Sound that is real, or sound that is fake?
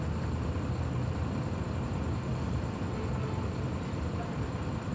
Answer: real